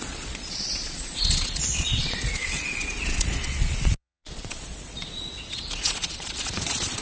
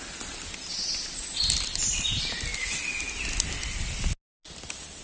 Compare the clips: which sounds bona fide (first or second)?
second